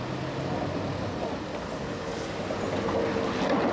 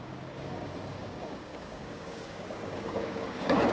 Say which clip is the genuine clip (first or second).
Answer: first